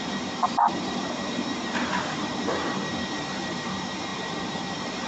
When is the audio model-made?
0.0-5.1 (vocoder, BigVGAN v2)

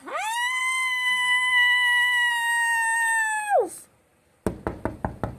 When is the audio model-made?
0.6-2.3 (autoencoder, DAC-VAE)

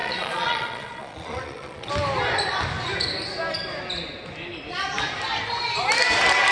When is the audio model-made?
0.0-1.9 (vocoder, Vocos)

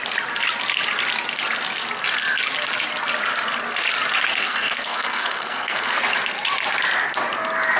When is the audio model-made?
4.4-6.0 (codec, SNAC)